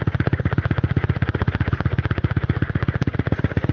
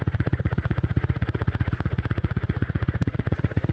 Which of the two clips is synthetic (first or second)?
second